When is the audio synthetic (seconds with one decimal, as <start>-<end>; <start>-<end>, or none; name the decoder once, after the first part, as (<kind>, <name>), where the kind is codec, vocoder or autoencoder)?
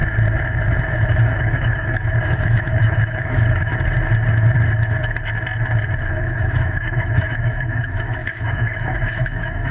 1.3-3.7 (autoencoder, DAC-VAE); 6.1-9.7